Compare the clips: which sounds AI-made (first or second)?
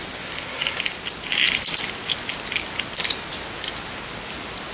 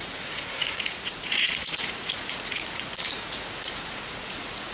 second